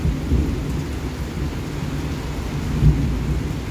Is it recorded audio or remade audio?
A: recorded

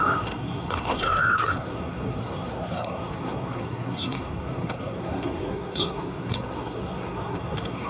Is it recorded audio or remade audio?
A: remade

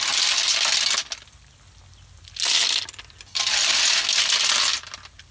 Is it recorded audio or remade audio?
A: recorded